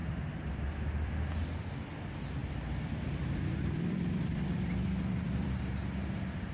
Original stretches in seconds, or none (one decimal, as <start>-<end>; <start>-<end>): 1.1-2.4

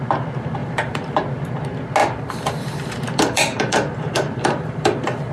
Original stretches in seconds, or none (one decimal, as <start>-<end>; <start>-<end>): 0.0-0.6; 1.2-2.0